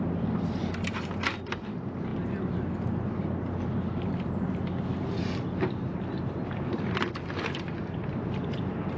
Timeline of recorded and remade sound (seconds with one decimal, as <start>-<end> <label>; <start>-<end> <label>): 0.0-9.0 recorded